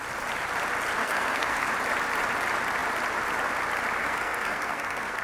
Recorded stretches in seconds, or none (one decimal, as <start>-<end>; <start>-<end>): 0.0-1.0; 1.7-4.0

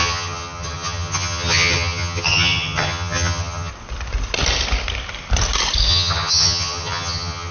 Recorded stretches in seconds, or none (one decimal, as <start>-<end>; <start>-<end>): 3.7-5.9

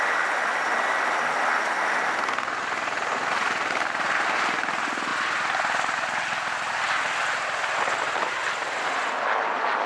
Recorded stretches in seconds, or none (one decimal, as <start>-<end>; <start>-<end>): 0.0-5.1; 8.3-9.9

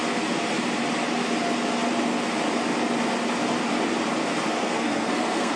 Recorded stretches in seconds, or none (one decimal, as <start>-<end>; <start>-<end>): 0.0-4.6

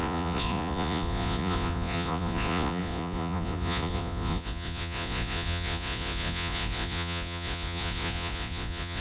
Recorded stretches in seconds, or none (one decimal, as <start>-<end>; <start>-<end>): none